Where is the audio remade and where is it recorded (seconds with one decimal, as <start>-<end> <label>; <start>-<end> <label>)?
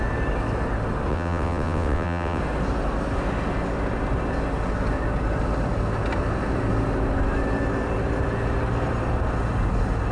0.0-1.1 recorded; 1.1-2.4 remade; 2.4-10.1 recorded